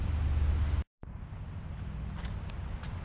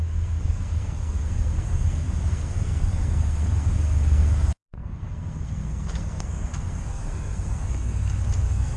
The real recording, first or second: first